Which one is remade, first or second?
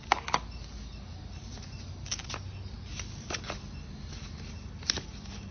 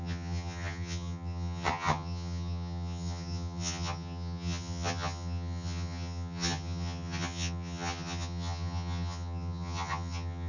second